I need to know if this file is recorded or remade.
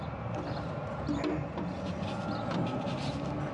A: recorded